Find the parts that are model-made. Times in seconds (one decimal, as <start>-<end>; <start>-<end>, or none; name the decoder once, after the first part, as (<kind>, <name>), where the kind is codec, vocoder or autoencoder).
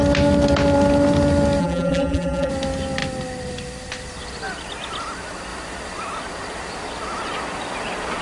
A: 1.6-2.5 (vocoder, BigVGAN v2)